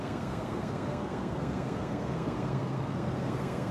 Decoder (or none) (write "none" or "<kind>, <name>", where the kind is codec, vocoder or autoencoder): codec, SNAC